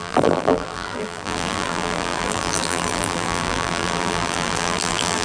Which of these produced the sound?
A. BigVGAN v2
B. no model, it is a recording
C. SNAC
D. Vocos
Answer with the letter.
A